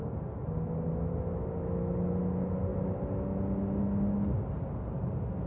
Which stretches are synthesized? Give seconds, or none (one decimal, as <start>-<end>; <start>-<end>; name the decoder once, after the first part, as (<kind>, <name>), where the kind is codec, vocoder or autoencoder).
none